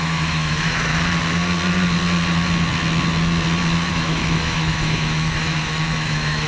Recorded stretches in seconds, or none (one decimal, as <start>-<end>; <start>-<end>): 0.9-3.9